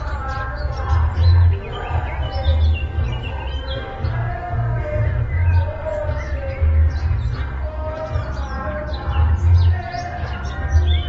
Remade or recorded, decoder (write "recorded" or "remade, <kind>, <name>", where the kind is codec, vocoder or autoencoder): recorded